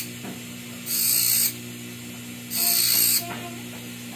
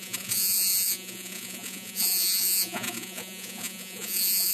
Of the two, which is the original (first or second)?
first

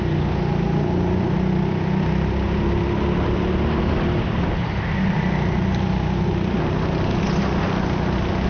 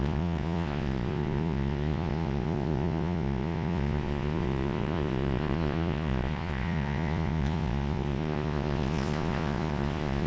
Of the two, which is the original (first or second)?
first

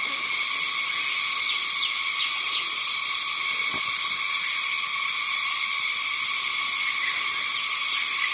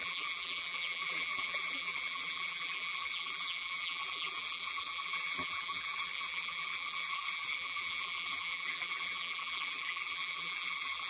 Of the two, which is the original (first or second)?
first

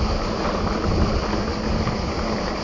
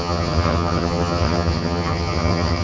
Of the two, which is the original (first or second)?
first